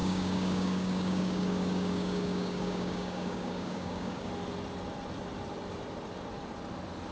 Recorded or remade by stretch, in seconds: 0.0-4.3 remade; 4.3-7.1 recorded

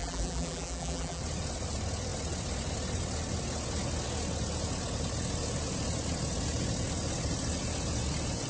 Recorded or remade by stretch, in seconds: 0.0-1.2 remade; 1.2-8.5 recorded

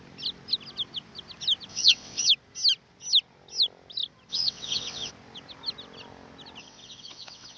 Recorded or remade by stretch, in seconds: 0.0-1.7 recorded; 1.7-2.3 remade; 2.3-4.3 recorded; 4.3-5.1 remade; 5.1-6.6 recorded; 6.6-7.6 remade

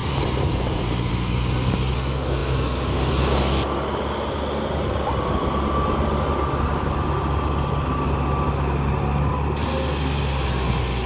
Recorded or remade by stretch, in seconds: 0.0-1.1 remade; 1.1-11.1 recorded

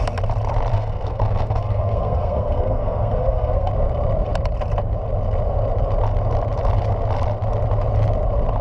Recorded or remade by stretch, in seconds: 0.0-0.7 recorded; 0.7-3.7 remade; 3.7-8.6 recorded